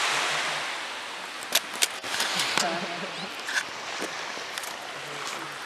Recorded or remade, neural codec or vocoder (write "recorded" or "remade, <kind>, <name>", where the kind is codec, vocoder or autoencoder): recorded